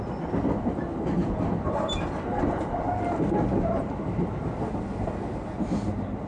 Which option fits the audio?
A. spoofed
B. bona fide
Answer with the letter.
B